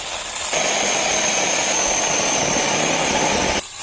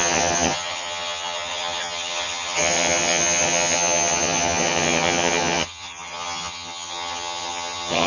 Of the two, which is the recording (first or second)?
first